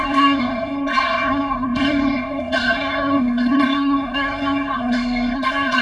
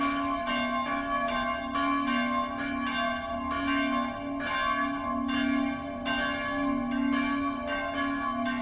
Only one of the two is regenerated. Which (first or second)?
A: first